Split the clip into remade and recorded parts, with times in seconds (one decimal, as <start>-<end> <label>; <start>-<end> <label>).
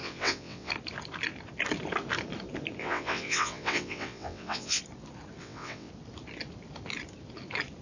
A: 0.0-0.7 remade; 0.7-2.8 recorded; 2.8-4.8 remade; 4.8-5.4 recorded; 5.4-5.9 remade; 5.9-7.8 recorded